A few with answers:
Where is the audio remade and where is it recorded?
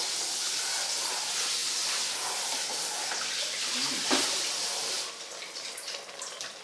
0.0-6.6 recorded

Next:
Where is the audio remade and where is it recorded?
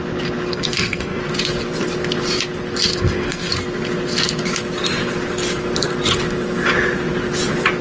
0.0-0.5 recorded; 0.5-1.2 remade; 1.2-2.9 recorded; 2.9-3.5 remade; 3.5-7.8 recorded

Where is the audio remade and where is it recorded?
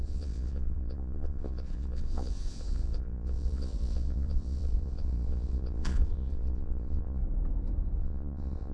0.0-7.2 remade; 7.2-8.0 recorded; 8.0-8.7 remade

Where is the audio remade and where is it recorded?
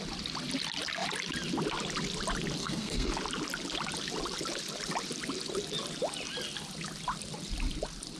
0.0-2.6 recorded; 2.6-3.1 remade; 3.1-8.2 recorded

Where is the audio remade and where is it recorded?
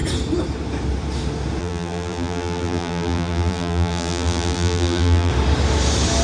0.0-1.6 recorded; 1.6-5.3 remade; 5.3-6.2 recorded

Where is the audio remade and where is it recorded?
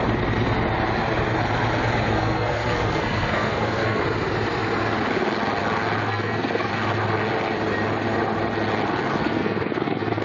0.0-2.1 recorded; 2.1-4.0 remade; 4.0-6.0 recorded; 6.0-6.7 remade; 6.7-9.2 recorded; 9.2-10.2 remade